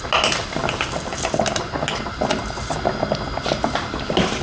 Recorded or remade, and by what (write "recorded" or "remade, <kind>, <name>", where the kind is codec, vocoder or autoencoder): recorded